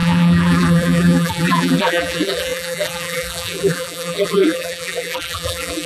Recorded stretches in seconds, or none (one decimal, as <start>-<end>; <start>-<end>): none